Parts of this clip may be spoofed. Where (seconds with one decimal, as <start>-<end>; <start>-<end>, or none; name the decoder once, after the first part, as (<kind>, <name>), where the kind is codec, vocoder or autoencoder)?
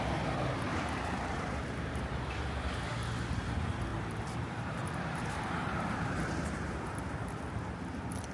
0.7-1.9 (vocoder, BigVGAN v2); 3.9-7.8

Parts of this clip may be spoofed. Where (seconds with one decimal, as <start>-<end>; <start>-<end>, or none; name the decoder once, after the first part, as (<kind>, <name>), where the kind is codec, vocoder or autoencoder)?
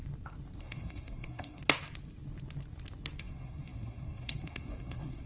0.6-1.6 (codec, SNAC); 3.2-5.3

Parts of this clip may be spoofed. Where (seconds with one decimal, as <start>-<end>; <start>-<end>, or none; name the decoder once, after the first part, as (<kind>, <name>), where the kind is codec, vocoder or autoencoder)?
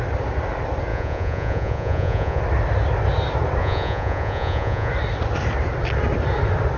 0.9-2.4 (vocoder, Vocos); 3.6-4.9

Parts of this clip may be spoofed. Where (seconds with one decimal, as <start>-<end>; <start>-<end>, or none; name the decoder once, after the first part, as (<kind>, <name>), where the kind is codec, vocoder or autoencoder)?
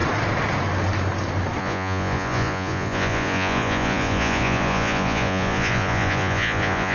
1.6-6.9 (vocoder, Vocos)